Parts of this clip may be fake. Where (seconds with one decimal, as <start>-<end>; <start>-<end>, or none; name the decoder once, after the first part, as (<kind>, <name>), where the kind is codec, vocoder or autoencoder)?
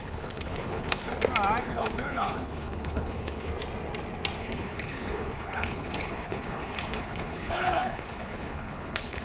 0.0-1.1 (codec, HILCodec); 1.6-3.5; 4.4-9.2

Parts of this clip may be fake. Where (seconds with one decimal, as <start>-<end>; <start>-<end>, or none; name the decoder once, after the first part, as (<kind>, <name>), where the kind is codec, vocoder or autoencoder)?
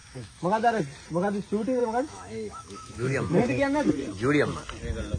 0.0-0.8 (autoencoder, DAC-VAE); 1.8-3.9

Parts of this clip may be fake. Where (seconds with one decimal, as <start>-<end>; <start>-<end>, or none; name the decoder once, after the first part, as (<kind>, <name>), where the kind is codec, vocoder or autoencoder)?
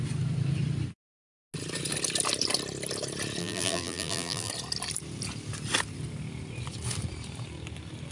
3.4-4.5 (vocoder, BigVGAN v2)